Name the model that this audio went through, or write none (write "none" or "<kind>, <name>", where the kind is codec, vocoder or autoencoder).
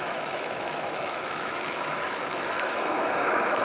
autoencoder, DAC-VAE